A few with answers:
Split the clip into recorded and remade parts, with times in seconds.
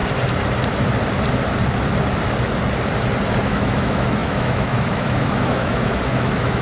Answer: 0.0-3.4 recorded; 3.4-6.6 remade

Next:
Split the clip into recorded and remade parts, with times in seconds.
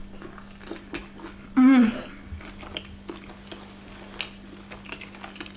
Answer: 0.0-5.6 recorded